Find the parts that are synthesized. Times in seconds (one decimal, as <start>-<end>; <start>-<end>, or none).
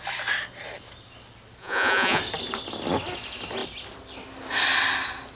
1.6-2.2